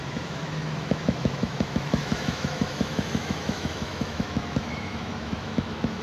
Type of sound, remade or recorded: remade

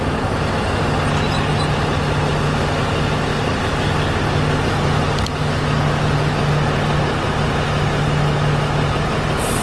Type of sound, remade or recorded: recorded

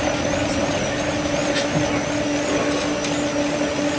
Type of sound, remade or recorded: recorded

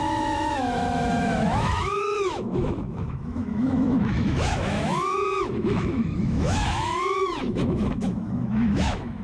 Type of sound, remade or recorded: remade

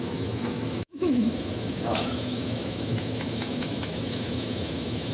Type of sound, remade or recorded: remade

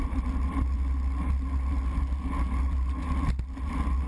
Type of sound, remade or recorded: recorded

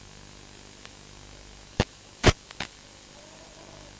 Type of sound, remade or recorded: remade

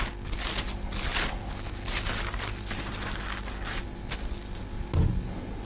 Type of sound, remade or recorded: recorded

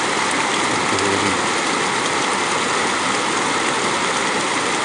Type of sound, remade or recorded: recorded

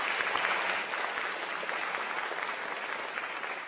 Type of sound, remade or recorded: recorded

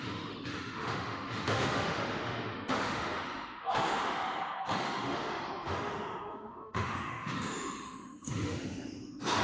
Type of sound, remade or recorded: remade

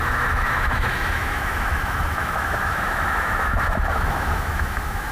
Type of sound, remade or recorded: remade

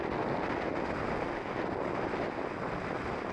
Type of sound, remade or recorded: recorded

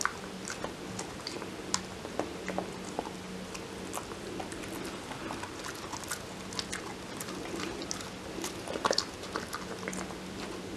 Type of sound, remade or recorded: recorded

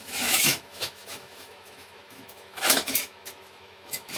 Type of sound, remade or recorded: remade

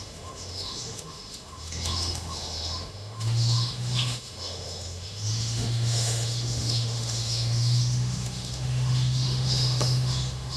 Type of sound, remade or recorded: remade